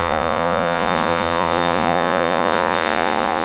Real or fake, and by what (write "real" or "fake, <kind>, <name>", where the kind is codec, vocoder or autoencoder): fake, vocoder, Vocos